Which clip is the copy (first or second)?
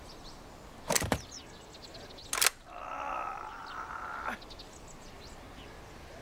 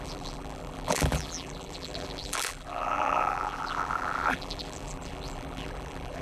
second